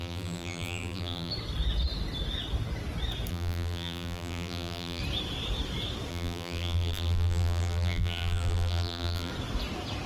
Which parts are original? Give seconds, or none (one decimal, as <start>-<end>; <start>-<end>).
1.3-3.3; 5.0-6.1; 9.3-10.1